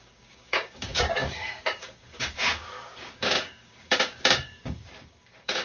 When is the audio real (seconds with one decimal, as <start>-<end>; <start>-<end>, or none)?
none